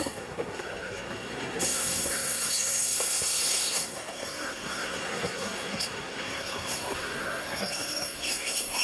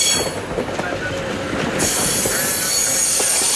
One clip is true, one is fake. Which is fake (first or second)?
first